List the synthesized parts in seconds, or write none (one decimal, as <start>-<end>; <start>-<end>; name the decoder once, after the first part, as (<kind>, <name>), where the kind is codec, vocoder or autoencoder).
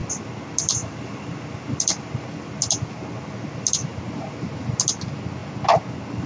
none